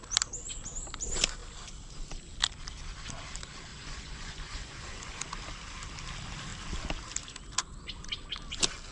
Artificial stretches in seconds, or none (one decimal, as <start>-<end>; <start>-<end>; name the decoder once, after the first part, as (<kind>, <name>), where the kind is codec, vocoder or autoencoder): 3.7-5.2 (vocoder, Vocos)